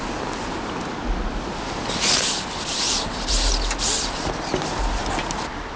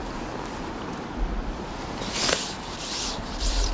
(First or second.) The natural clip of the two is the first